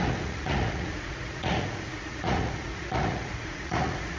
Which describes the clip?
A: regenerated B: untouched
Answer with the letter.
A